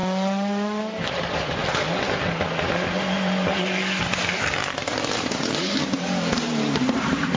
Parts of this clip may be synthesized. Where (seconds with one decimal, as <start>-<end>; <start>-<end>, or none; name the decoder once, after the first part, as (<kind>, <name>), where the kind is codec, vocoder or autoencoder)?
0.8-1.6 (vocoder, BigVGAN v2); 4.3-7.4